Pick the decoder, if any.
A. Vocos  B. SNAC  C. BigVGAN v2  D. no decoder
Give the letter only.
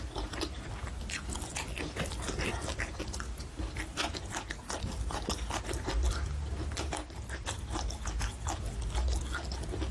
D